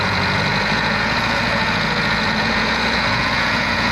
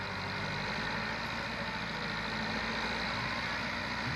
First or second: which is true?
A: second